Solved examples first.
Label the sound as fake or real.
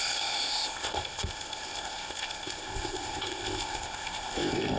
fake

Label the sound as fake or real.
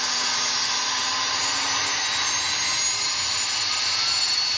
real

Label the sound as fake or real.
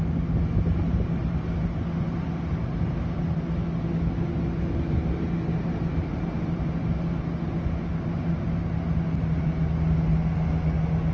real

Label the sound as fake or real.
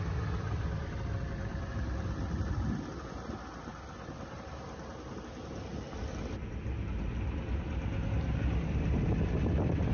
real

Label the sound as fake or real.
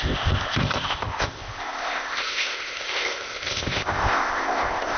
fake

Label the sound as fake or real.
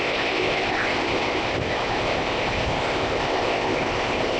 fake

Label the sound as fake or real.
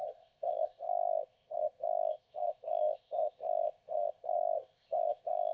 fake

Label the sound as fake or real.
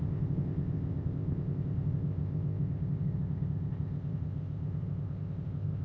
fake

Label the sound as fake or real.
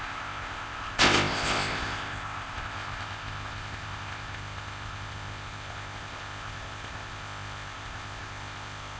fake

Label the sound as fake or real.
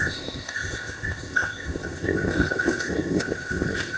fake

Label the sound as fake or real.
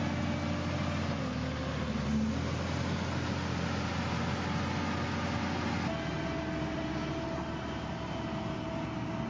real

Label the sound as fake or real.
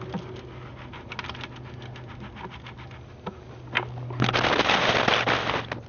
real